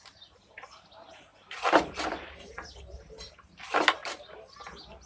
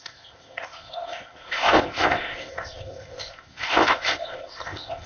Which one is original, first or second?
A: first